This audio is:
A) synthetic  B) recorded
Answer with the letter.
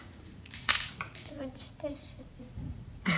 A